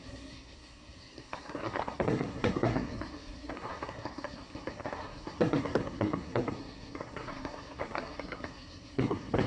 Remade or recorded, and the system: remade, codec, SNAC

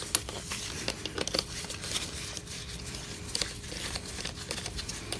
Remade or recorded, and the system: recorded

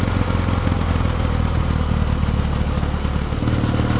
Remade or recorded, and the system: recorded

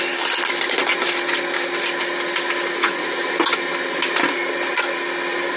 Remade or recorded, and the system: recorded